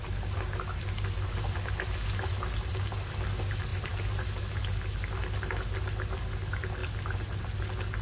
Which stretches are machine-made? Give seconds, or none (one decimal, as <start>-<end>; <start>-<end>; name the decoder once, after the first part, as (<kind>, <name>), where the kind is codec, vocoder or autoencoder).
none